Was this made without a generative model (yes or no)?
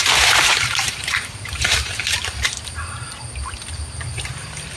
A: no